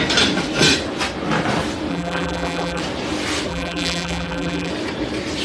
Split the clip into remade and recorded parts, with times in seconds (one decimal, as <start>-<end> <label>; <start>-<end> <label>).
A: 0.0-1.9 recorded; 1.9-2.8 remade; 2.8-3.5 recorded; 3.5-4.7 remade; 4.7-5.4 recorded